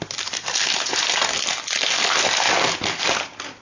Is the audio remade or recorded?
remade